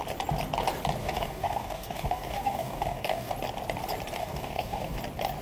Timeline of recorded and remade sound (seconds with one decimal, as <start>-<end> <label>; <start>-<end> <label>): 0.0-1.0 recorded; 1.0-3.3 remade; 3.3-4.2 recorded; 4.2-5.0 remade; 5.0-5.4 recorded